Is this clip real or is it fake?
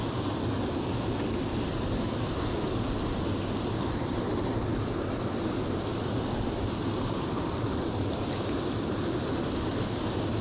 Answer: real